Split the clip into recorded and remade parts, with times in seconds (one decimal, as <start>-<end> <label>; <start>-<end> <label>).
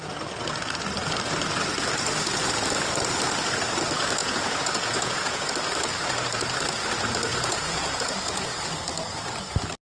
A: 0.0-4.2 recorded; 4.2-5.5 remade; 5.5-7.3 recorded; 7.3-8.7 remade; 8.7-10.0 recorded